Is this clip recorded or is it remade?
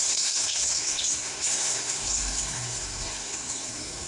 remade